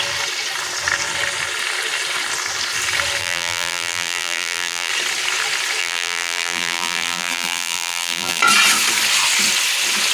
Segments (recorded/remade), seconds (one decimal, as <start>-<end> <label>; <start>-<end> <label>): 0.0-3.2 recorded; 3.2-4.9 remade; 4.9-5.8 recorded; 5.8-8.4 remade; 8.4-10.1 recorded